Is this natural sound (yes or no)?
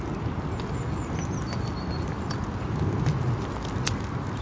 yes